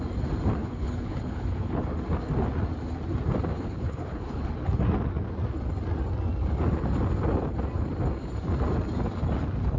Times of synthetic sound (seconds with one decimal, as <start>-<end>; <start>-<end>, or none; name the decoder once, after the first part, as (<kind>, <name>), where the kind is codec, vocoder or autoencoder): 0.6-1.8 (codec, HILCodec); 3.5-4.5